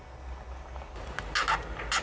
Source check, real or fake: real